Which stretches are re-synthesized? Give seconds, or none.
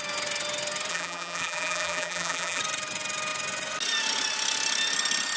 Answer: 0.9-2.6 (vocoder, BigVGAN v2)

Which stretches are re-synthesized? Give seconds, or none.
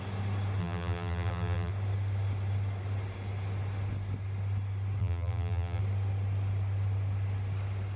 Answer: 0.6-1.7 (vocoder, BigVGAN v2); 5.0-5.8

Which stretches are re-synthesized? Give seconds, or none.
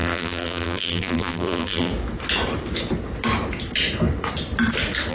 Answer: 0.0-1.9 (vocoder, BigVGAN v2)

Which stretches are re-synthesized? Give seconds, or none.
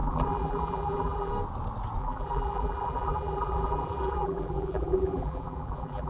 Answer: 0.0-1.3 (vocoder, BigVGAN v2); 2.0-6.1